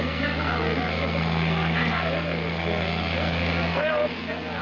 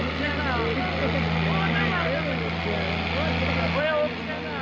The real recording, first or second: second